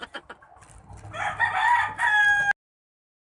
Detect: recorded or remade recorded